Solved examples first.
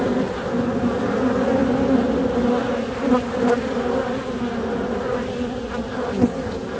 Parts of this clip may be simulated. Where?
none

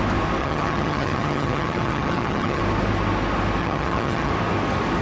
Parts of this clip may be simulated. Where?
0.4-2.6 (vocoder, HiFi-GAN); 3.6-4.3

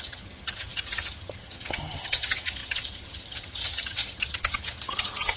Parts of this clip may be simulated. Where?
0.0-5.4 (vocoder, HiFi-GAN)

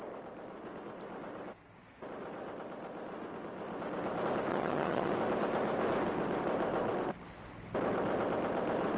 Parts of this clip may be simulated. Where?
4.5-5.1 (vocoder, HiFi-GAN)

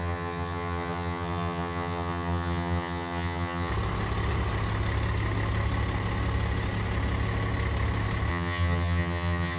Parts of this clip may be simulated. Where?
0.0-3.7 (vocoder, HiFi-GAN); 8.3-9.6

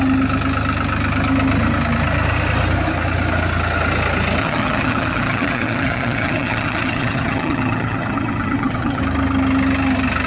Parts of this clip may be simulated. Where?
4.4-9.0 (vocoder, HiFi-GAN)

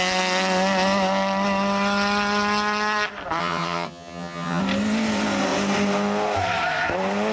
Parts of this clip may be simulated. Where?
3.4-4.6 (vocoder, HiFi-GAN)